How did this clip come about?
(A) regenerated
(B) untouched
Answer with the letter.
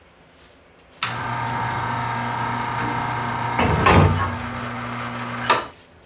B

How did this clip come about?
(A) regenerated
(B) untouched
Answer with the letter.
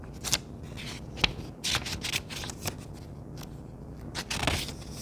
B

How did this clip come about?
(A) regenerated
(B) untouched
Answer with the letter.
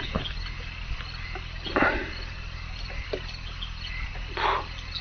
B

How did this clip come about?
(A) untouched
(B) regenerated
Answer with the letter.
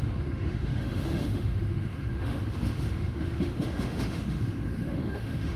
B